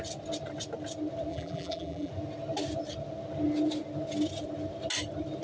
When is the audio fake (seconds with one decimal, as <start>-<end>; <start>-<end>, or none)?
1.3-2.1